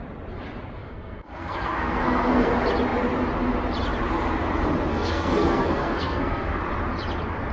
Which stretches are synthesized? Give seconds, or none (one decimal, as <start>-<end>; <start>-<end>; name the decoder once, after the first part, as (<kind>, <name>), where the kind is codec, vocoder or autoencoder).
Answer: 0.8-2.5 (codec, SNAC); 4.9-6.6